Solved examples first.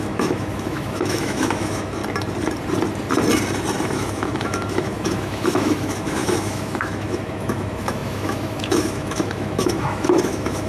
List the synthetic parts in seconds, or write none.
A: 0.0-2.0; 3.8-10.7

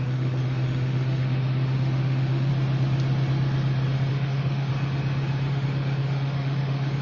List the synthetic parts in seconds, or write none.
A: 0.0-2.5; 4.1-4.7; 5.5-7.0

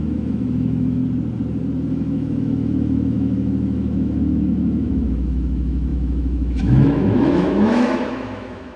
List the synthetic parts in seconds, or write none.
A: 0.0-1.0; 1.9-8.8

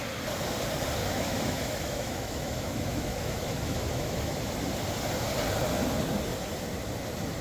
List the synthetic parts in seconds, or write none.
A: 1.0-4.5

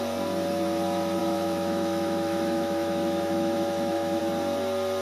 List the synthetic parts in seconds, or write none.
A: 1.2-4.2

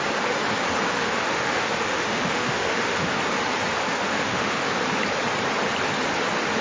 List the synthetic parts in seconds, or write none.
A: 0.9-3.2; 3.8-4.7